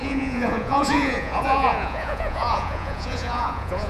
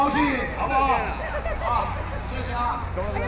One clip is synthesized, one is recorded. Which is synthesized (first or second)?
first